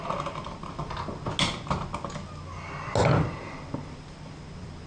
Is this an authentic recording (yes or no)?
yes